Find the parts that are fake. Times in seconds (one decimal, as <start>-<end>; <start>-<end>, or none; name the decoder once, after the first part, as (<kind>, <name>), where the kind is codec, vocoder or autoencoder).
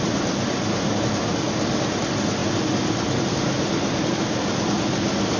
none